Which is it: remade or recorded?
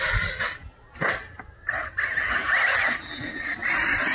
recorded